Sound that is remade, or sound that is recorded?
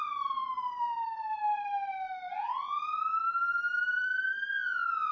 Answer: recorded